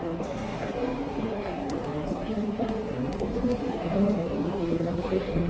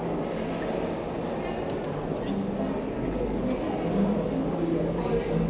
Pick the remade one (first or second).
first